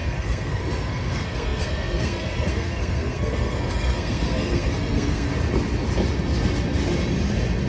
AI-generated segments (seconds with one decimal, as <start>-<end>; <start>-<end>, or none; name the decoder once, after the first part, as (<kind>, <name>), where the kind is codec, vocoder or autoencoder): 0.0-5.3 (codec, SNAC)